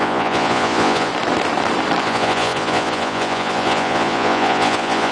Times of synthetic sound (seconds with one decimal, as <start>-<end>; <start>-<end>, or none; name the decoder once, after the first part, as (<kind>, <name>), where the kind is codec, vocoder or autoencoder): 0.0-1.1 (vocoder, Vocos); 2.0-5.1